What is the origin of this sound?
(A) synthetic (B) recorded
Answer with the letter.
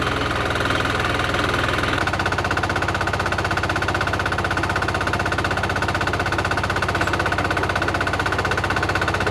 B